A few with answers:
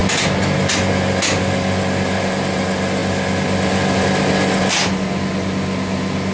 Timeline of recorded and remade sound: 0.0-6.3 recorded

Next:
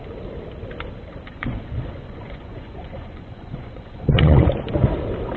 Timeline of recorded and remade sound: 0.0-1.3 recorded; 1.3-4.5 remade; 4.5-5.4 recorded

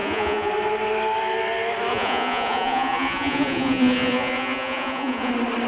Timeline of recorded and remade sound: 0.0-0.5 remade; 0.5-1.9 recorded; 1.9-5.3 remade; 5.3-5.7 recorded

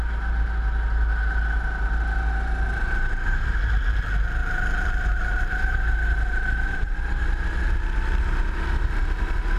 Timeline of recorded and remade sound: 0.0-9.6 recorded

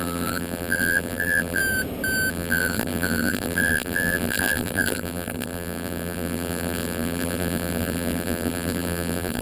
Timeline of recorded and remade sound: 0.0-1.6 remade; 1.6-2.3 recorded; 2.3-9.4 remade